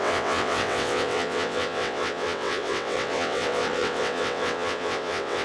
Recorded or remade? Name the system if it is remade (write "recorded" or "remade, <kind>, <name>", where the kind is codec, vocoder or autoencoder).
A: remade, vocoder, WaveNeXt